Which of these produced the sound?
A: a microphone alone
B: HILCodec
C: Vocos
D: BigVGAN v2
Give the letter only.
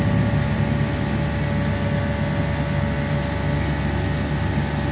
A